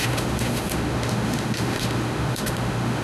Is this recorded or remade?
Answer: remade